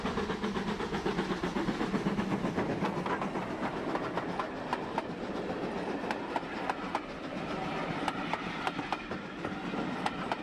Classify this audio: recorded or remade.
recorded